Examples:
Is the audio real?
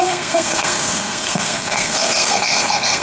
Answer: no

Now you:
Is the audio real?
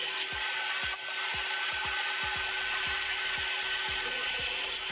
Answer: yes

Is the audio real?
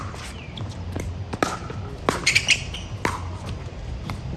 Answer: yes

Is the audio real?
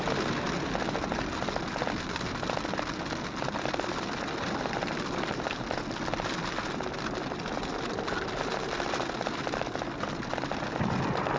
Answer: yes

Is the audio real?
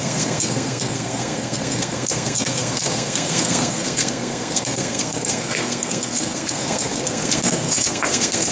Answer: no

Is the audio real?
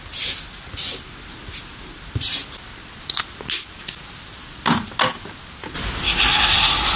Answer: yes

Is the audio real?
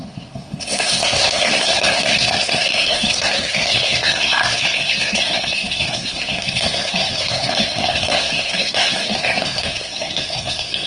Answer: no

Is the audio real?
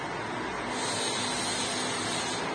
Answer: yes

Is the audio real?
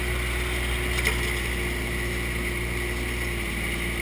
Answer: yes